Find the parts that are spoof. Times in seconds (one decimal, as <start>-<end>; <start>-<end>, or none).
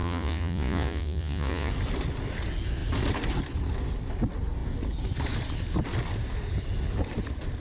0.0-1.7